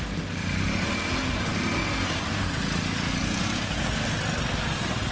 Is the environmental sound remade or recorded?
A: recorded